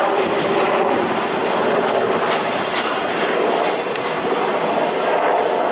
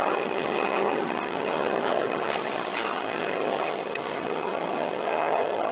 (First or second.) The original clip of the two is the first